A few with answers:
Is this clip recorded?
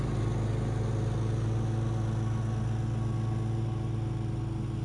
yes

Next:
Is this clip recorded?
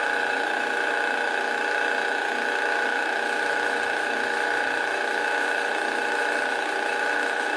no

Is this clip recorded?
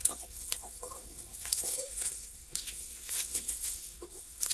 no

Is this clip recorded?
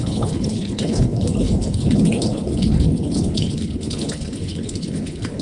no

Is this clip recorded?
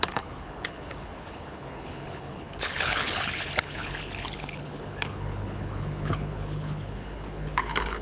no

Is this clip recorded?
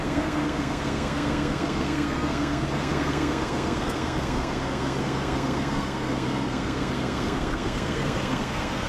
no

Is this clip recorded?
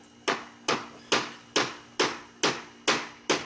yes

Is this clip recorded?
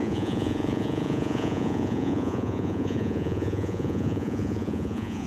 no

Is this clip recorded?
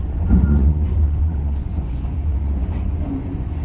no